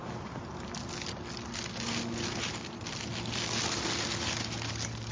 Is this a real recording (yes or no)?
yes